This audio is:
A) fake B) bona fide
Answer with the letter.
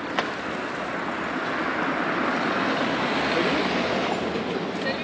B